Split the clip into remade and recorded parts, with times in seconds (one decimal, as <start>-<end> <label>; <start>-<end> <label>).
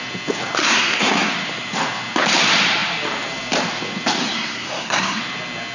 0.0-0.6 recorded; 0.6-1.3 remade; 1.3-4.2 recorded; 4.2-5.2 remade; 5.2-5.7 recorded